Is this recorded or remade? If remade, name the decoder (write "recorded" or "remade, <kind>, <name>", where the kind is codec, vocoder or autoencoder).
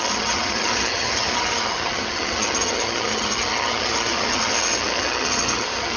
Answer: remade, vocoder, HiFi-GAN